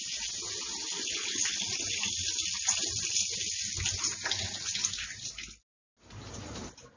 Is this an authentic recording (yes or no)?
yes